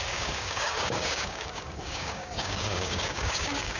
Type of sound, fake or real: fake